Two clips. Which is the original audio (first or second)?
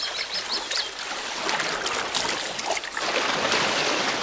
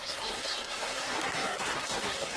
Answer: first